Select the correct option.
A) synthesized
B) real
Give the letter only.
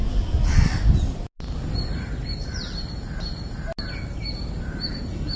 B